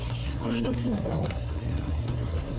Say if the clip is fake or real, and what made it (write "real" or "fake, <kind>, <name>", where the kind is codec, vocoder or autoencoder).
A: fake, codec, SNAC